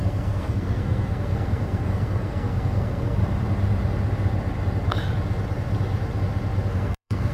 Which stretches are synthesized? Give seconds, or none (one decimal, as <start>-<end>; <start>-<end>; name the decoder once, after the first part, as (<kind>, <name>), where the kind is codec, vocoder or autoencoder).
0.0-3.2 (codec, SNAC); 6.7-7.3